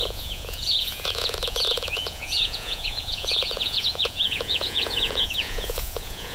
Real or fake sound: fake